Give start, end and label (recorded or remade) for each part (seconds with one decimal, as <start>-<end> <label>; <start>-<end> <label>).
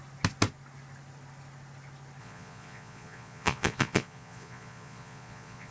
0.0-2.2 recorded; 2.2-5.7 remade